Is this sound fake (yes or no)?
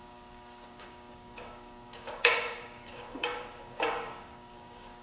yes